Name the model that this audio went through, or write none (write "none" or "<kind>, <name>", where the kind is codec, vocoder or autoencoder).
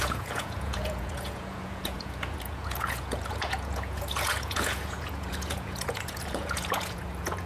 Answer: vocoder, Vocos